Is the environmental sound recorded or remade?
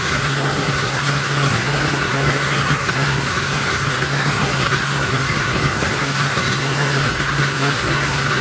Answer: remade